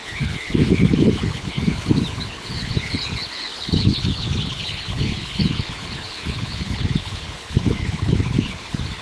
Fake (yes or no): yes